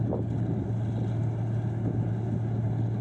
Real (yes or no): yes